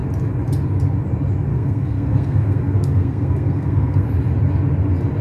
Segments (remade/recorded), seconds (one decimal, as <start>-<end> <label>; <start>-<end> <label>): 0.0-1.5 recorded; 1.5-4.1 remade; 4.1-5.2 recorded